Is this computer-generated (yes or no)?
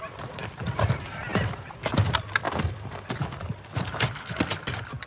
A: yes